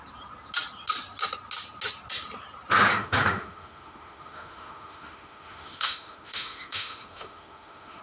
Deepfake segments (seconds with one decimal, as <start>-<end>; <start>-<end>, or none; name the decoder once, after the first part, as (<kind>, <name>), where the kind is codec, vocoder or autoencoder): 2.9-8.0 (autoencoder, DAC-VAE)